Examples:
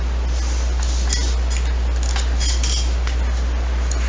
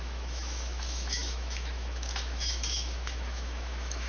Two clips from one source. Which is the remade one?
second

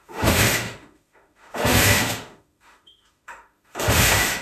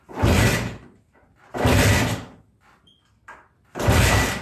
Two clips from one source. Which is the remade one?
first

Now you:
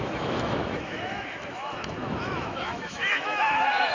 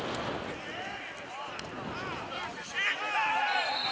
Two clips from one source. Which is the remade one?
first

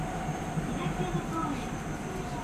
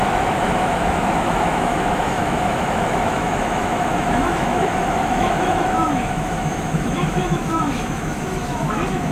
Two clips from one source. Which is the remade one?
second